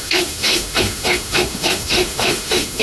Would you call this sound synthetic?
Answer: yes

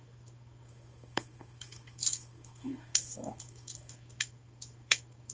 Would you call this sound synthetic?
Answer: yes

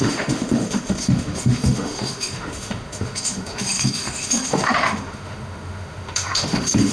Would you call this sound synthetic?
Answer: yes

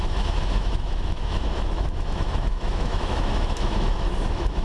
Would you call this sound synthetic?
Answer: yes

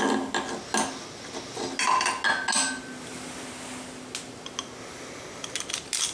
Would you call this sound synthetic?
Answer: no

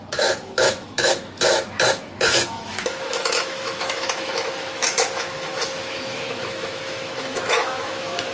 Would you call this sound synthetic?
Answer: yes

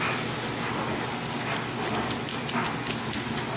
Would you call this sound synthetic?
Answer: no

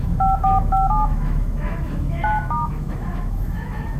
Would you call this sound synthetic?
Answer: yes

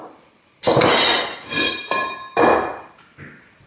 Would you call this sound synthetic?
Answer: no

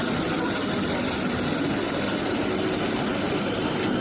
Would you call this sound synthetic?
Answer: no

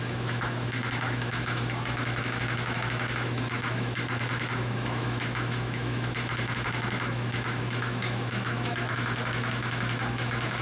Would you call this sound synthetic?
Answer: yes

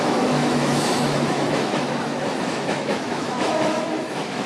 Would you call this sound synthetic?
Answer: yes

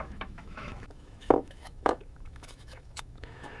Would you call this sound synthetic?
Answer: yes